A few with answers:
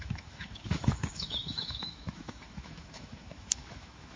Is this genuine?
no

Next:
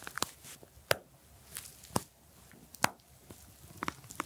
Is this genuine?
yes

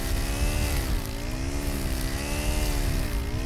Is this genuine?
yes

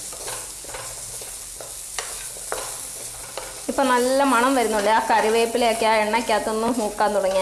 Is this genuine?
yes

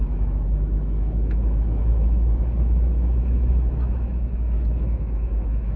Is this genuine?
no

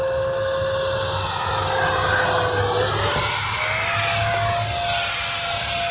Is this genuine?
yes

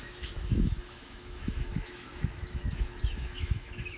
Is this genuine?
no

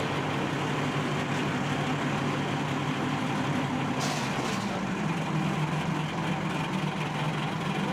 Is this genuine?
yes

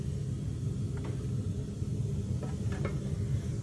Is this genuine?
yes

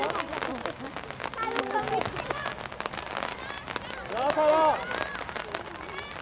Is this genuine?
yes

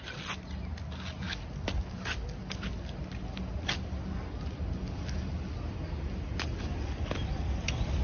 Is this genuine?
yes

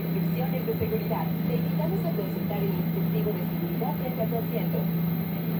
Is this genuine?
yes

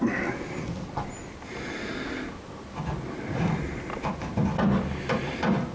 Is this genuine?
yes